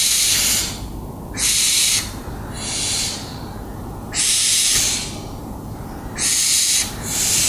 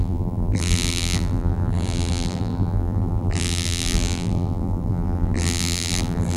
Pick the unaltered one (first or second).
first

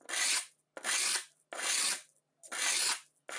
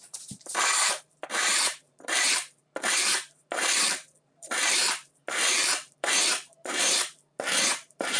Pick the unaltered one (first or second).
first